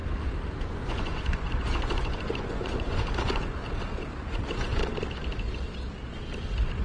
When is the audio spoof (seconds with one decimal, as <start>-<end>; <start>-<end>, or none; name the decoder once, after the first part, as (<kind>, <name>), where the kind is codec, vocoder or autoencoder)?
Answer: 0.6-3.6 (vocoder, Vocos); 4.3-4.8